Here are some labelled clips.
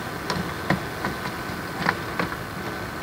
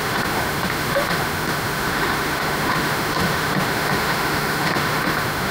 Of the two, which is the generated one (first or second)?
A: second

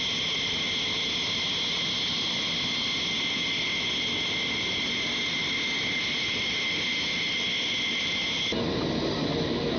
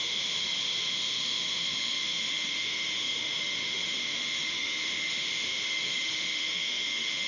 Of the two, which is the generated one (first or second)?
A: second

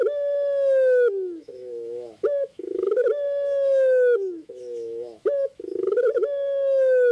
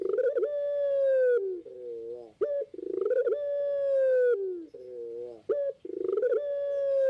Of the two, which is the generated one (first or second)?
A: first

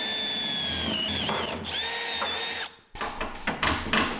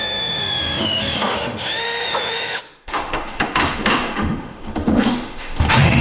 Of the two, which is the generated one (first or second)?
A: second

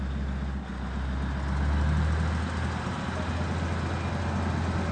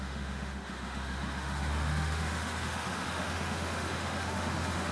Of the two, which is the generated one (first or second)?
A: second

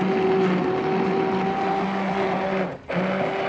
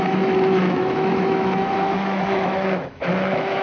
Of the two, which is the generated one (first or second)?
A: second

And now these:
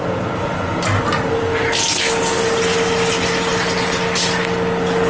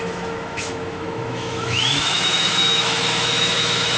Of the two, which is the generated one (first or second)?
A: second